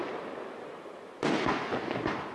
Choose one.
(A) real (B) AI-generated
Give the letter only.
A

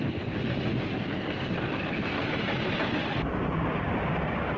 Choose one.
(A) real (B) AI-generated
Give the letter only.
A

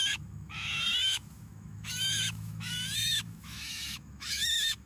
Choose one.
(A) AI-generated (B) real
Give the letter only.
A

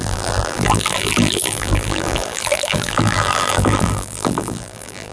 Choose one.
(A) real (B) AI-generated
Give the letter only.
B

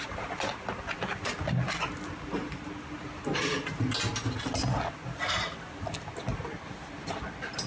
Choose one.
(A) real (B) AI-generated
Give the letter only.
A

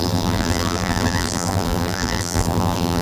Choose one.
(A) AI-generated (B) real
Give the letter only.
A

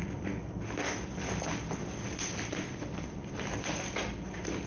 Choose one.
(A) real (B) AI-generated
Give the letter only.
A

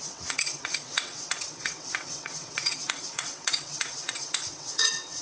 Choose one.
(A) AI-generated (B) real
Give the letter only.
A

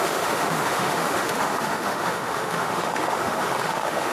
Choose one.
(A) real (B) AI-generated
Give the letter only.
B